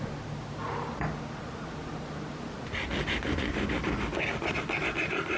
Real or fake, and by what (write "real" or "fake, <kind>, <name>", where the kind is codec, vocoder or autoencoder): real